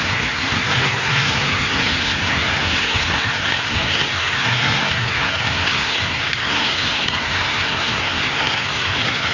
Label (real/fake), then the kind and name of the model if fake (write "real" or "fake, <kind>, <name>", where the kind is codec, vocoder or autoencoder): fake, codec, SNAC